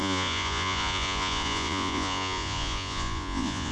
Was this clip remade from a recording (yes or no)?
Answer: yes